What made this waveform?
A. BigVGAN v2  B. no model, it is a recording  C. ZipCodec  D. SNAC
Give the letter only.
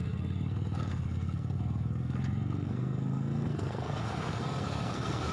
D